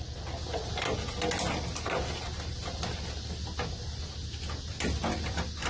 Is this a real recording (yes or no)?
yes